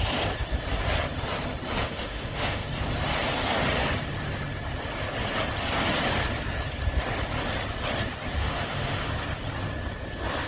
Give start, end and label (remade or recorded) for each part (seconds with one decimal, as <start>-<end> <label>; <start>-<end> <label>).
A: 0.0-1.8 recorded; 1.8-2.6 remade; 2.6-8.4 recorded; 8.4-9.1 remade; 9.1-10.5 recorded